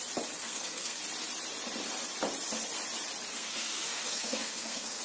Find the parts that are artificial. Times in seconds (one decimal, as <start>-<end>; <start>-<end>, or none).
0.4-1.0; 3.3-5.0